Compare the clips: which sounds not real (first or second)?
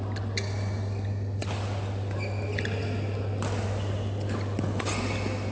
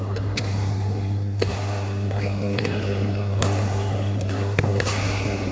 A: second